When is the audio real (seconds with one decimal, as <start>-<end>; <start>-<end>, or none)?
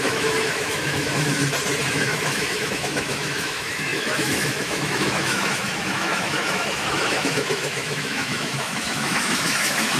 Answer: 1.4-1.9